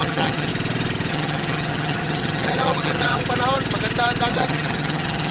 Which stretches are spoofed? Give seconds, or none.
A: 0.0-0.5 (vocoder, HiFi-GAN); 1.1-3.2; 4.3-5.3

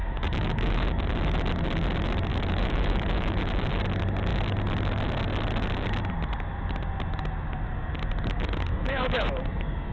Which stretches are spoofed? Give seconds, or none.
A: 0.0-0.7 (autoencoder, DAC-VAE); 2.3-3.4; 8.7-9.4

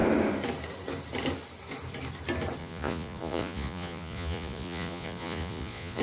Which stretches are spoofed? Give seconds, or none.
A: 2.6-6.0 (vocoder, Vocos)

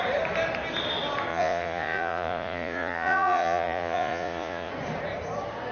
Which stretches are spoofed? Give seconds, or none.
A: 1.3-4.7 (vocoder, Vocos)

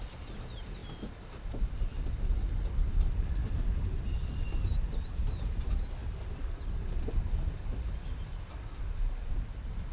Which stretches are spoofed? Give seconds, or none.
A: none

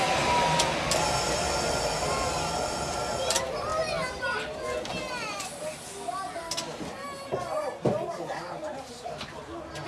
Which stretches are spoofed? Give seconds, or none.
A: none

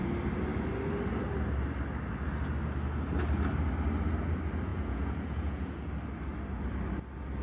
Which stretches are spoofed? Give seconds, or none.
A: 4.7-5.9 (vocoder, Vocos)